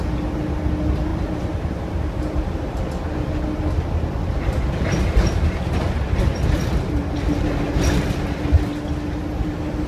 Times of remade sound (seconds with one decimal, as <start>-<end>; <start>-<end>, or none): 1.1-2.8